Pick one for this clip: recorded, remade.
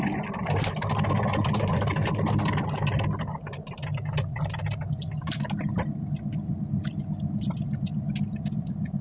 recorded